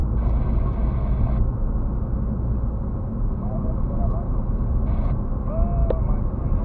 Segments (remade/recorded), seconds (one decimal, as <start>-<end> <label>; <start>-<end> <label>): 0.0-3.1 recorded; 3.1-3.8 remade; 3.8-6.6 recorded